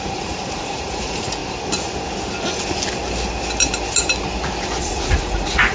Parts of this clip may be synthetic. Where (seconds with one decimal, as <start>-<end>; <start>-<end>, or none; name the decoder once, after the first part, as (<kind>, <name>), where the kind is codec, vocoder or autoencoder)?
0.0-1.4 (vocoder, Vocos); 4.8-5.7